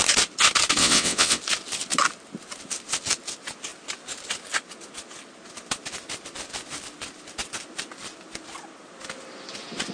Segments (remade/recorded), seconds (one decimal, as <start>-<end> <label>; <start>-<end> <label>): 0.0-0.8 recorded; 0.8-1.4 remade; 1.4-9.9 recorded